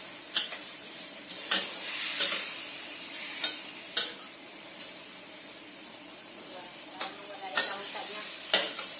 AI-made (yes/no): yes